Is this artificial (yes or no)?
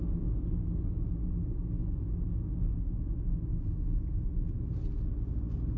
no